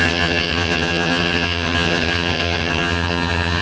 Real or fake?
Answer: fake